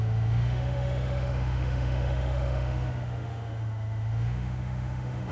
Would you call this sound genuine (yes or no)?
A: no